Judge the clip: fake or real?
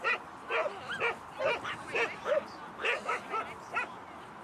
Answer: real